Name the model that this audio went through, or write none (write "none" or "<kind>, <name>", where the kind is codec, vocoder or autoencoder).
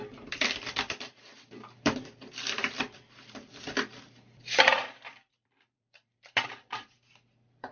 vocoder, BigVGAN v2